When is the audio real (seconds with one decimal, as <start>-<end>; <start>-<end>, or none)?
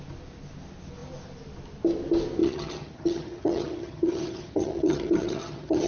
0.0-2.4